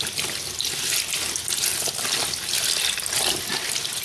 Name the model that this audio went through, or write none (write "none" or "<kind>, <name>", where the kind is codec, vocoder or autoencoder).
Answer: none